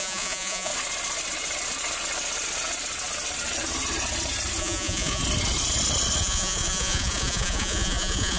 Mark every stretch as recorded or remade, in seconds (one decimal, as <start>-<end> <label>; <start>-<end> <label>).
0.0-0.7 remade; 0.7-4.6 recorded; 4.6-5.2 remade; 5.2-6.2 recorded; 6.2-8.4 remade